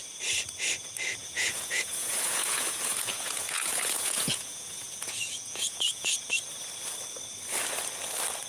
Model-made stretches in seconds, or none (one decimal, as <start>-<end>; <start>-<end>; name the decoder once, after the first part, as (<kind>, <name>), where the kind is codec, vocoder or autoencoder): 1.2-6.3 (vocoder, Vocos)